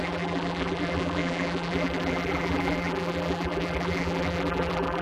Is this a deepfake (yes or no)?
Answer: yes